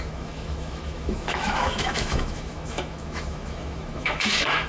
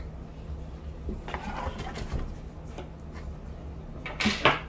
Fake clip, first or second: first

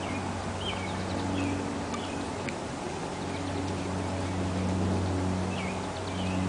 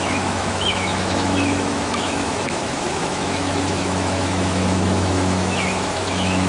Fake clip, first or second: second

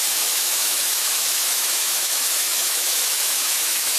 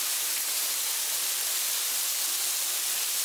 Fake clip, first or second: first